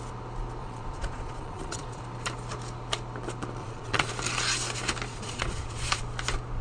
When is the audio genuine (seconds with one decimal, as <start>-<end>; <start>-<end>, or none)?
0.0-0.6; 2.0-3.6; 4.1-5.1; 6.0-6.6